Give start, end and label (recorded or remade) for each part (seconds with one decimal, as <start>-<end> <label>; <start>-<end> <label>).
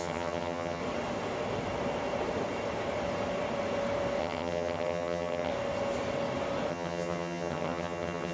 0.0-0.8 remade; 0.8-4.2 recorded; 4.2-5.5 remade; 5.5-6.7 recorded; 6.7-8.3 remade